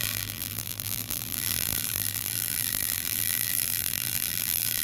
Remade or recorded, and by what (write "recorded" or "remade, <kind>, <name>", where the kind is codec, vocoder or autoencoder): remade, vocoder, BigVGAN v2